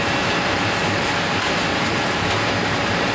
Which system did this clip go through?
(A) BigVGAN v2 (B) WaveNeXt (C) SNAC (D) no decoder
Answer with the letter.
A